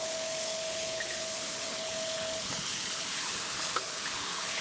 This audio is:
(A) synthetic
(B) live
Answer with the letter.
A